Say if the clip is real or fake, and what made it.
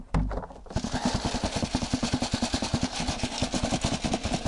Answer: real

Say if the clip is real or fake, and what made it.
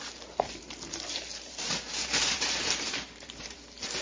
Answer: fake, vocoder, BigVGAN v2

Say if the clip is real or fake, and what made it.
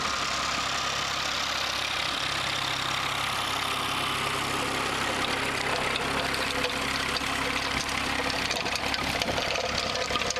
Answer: real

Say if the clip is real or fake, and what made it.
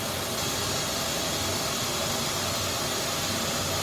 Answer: real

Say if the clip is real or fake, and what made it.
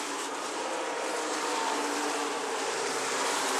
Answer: fake, vocoder, BigVGAN v2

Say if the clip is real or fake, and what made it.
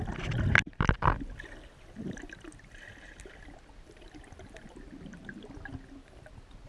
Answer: real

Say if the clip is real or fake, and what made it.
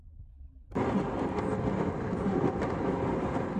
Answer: real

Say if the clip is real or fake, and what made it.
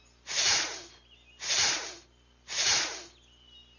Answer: real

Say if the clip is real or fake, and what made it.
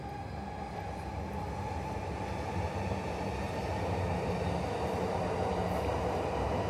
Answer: real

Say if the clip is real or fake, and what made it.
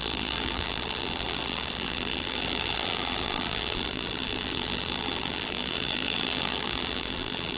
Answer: fake, vocoder, BigVGAN v2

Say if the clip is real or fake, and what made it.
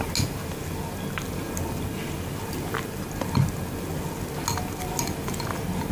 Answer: real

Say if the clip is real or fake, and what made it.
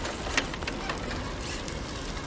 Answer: real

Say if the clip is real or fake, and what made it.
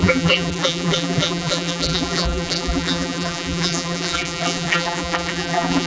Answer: fake, vocoder, BigVGAN v2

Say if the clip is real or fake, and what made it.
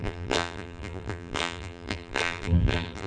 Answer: fake, vocoder, BigVGAN v2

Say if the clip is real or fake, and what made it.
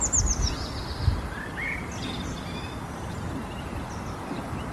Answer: real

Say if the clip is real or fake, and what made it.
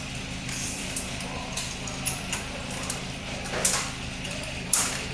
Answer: fake, vocoder, BigVGAN v2